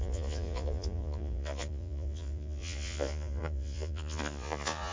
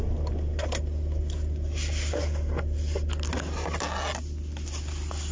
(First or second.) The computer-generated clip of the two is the first